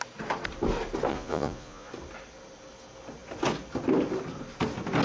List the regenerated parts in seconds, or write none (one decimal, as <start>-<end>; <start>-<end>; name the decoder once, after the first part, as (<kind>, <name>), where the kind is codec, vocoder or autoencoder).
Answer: 1.1-1.9 (vocoder, Vocos)